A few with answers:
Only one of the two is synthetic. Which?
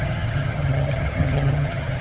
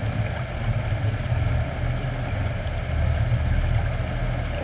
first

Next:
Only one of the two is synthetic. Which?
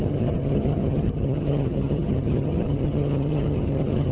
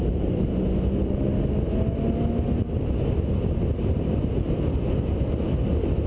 first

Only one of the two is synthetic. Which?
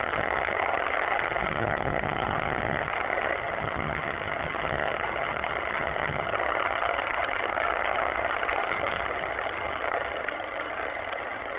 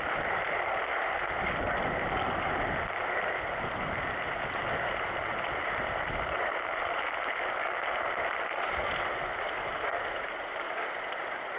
first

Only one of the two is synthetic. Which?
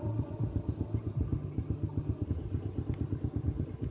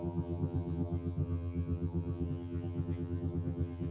second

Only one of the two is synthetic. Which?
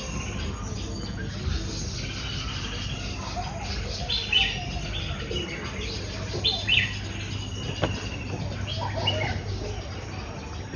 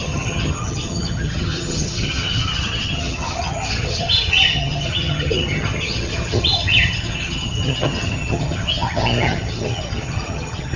second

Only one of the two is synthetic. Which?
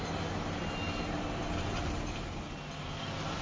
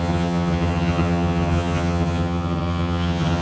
second